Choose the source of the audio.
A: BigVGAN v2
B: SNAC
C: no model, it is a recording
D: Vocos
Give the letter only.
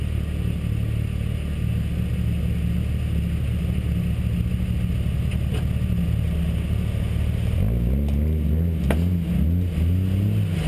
C